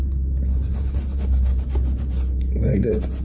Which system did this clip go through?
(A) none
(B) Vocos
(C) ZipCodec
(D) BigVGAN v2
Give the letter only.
A